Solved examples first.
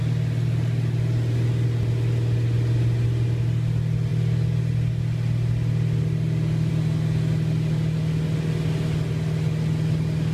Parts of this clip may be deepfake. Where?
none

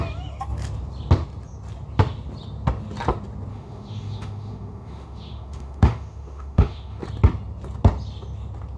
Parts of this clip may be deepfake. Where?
3.5-7.0 (autoencoder, DAC-VAE)

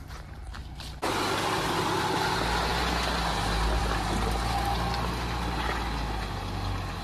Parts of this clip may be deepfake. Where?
none